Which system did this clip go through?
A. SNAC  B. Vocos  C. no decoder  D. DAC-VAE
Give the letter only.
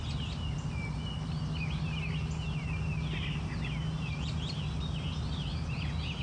C